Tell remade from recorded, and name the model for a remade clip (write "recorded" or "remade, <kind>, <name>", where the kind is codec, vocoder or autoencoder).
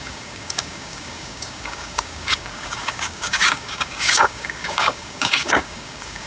remade, codec, DAC